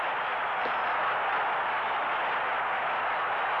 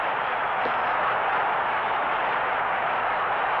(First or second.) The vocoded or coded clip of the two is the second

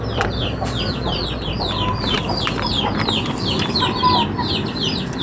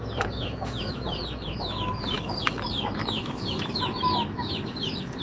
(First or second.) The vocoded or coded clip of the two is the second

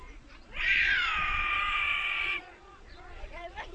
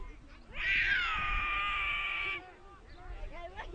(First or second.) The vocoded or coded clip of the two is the first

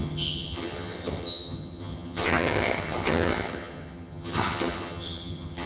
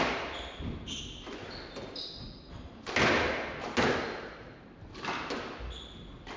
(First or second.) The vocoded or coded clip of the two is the first